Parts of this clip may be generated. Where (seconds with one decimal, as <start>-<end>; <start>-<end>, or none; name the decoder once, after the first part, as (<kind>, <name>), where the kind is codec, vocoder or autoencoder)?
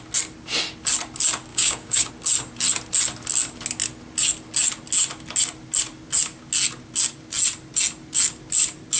1.5-2.1 (codec, DAC)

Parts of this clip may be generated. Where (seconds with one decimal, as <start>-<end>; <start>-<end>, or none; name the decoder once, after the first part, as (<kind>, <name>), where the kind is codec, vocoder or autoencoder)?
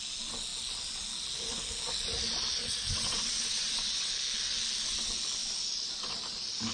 2.6-4.1 (vocoder, WaveNeXt)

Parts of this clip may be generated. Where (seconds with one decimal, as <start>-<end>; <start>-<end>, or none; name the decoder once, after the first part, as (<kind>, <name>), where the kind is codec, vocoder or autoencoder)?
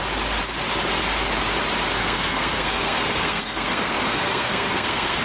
2.0-5.2 (codec, SNAC)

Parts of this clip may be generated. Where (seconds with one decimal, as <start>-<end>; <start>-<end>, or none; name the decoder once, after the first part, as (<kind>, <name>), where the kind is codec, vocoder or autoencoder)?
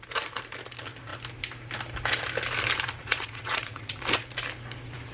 3.0-4.0 (vocoder, Vocos)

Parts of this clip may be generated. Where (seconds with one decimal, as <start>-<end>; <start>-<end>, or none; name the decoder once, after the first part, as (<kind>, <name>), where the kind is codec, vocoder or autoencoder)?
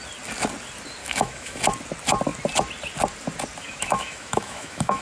1.0-1.6 (autoencoder, DAC-VAE); 3.6-5.0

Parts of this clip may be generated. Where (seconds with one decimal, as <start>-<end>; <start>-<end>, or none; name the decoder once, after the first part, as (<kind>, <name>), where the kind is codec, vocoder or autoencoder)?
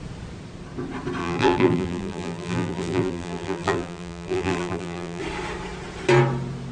1.2-5.2 (vocoder, BigVGAN v2)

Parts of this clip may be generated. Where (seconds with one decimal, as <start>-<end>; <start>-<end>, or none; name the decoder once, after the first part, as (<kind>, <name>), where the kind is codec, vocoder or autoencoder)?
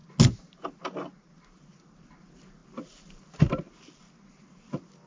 none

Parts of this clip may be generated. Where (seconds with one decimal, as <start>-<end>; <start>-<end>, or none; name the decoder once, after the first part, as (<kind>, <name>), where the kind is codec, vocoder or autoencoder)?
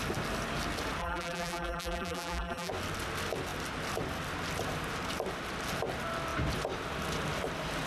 1.0-2.7 (vocoder, BigVGAN v2)